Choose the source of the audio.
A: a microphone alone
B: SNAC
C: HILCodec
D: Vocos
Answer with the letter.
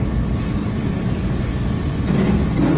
A